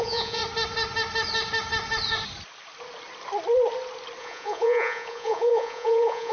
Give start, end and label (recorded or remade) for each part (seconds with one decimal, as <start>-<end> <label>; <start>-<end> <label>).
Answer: 0.0-0.4 remade; 0.4-4.2 recorded; 4.2-6.3 remade